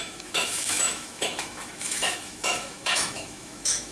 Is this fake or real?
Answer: fake